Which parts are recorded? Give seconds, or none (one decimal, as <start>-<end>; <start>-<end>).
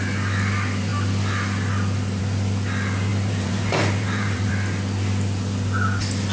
0.0-3.1; 4.5-6.3